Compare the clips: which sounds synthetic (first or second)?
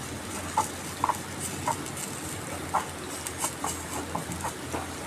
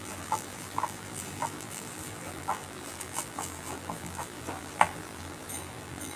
second